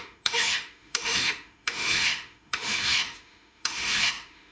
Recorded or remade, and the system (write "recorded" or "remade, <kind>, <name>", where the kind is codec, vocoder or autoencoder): remade, autoencoder, DAC-VAE